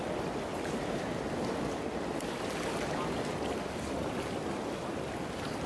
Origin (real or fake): fake